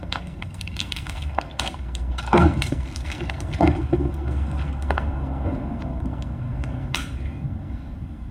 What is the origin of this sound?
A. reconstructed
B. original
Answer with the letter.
A